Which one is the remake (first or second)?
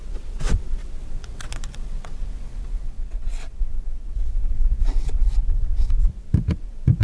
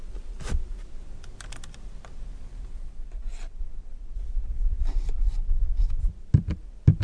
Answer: first